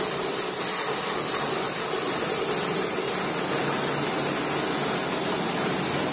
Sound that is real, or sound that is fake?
real